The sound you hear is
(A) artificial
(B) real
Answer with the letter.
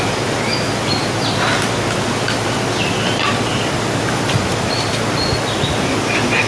B